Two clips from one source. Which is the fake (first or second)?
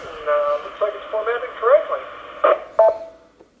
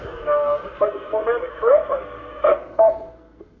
second